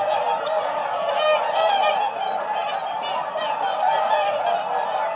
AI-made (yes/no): no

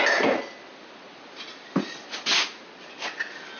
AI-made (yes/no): no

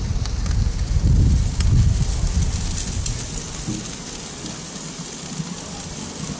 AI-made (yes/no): no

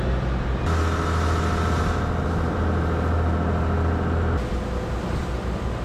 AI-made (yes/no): no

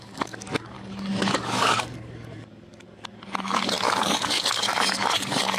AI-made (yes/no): yes